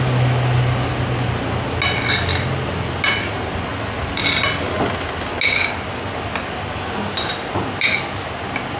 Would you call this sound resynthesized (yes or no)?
no